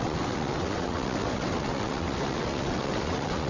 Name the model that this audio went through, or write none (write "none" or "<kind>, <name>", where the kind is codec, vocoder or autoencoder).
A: vocoder, WaveNeXt